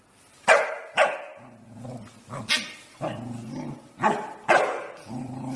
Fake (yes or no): no